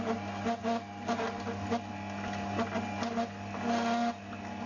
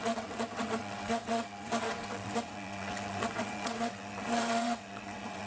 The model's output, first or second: second